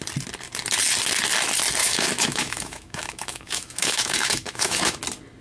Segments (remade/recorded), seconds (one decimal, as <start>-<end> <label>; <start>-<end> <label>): 0.0-1.8 recorded; 1.8-5.0 remade; 5.0-5.4 recorded